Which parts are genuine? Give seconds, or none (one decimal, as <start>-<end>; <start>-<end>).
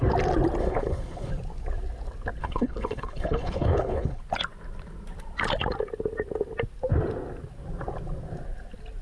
0.0-0.6; 1.3-2.4; 4.2-9.0